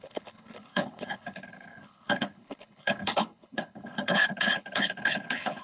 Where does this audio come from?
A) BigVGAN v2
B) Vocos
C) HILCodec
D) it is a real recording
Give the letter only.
C